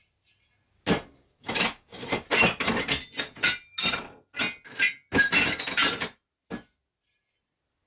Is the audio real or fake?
real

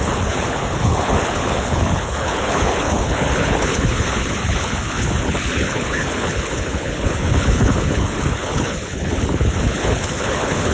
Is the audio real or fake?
fake